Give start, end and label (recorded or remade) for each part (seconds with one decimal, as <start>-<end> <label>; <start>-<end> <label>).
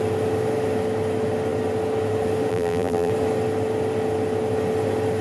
0.0-2.5 recorded; 2.5-3.1 remade; 3.1-5.2 recorded